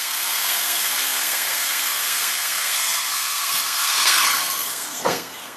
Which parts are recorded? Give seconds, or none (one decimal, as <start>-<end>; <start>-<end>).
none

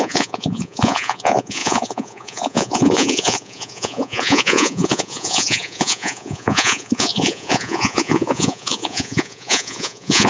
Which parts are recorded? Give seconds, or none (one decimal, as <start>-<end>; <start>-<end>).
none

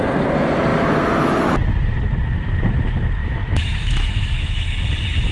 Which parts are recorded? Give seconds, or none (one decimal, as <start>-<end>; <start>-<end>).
0.0-3.2; 4.6-5.3